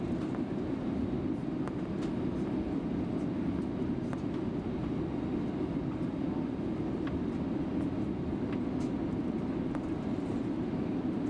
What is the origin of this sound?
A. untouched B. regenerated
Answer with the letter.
A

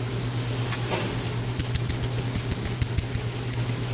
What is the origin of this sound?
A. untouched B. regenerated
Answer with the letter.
A